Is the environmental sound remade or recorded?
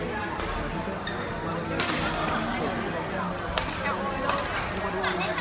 recorded